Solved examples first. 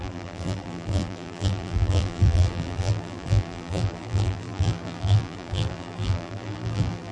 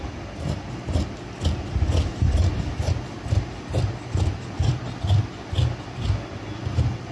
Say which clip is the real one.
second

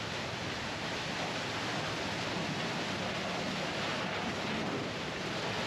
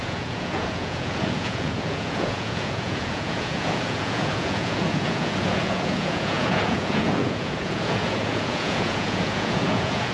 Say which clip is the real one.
first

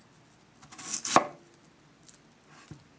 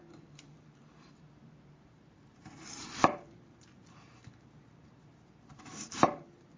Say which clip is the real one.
first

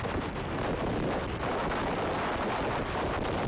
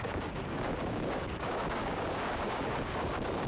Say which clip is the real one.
first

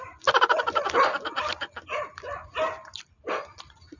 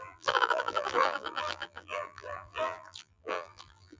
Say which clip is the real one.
first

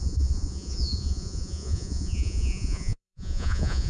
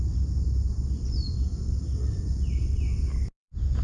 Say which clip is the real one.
second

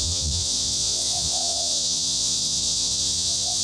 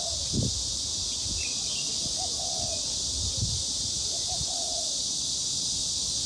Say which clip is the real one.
second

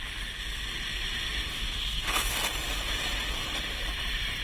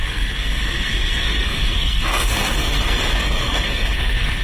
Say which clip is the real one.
first